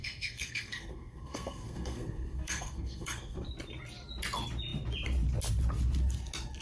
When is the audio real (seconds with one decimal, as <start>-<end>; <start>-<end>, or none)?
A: 3.5-6.6